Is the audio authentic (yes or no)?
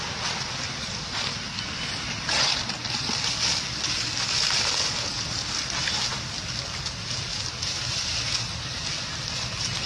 yes